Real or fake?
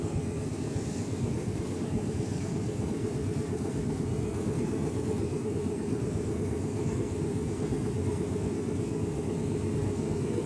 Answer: fake